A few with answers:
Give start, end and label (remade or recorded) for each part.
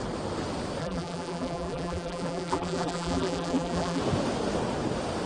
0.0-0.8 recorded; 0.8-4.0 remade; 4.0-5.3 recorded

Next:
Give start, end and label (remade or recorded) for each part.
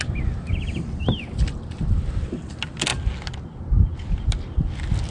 0.0-5.1 recorded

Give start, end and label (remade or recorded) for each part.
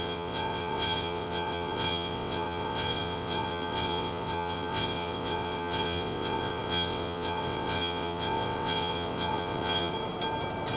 0.0-9.9 remade; 9.9-10.8 recorded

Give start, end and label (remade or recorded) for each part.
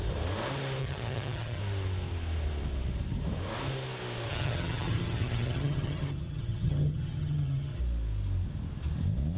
0.0-0.8 recorded; 0.8-1.6 remade; 1.6-4.3 recorded; 4.3-7.8 remade; 7.8-9.4 recorded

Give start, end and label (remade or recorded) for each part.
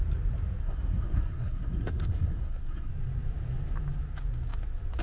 0.0-0.6 recorded; 0.6-2.9 remade; 2.9-5.0 recorded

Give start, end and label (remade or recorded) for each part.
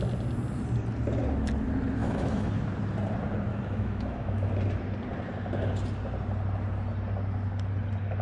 0.0-2.0 recorded; 2.0-2.5 remade; 2.5-3.5 recorded; 3.5-4.5 remade; 4.5-8.2 recorded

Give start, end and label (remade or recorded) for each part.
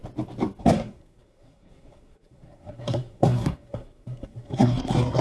0.0-0.6 recorded; 0.6-5.2 remade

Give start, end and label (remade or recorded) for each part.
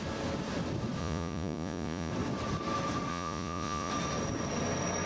0.0-1.0 recorded; 1.0-2.1 remade; 2.1-3.1 recorded; 3.1-3.9 remade; 3.9-5.1 recorded